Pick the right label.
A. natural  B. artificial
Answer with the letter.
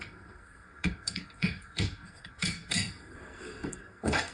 B